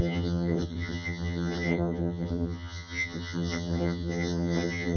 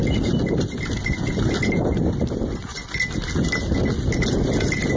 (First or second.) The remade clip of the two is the first